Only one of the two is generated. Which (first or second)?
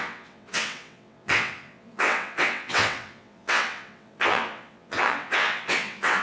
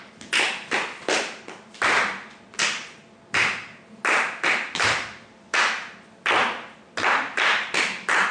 first